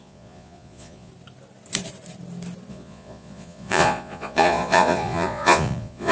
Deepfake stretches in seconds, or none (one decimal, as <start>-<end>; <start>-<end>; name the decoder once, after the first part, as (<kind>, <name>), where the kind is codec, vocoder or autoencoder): 0.0-1.1 (vocoder, Vocos); 2.7-6.1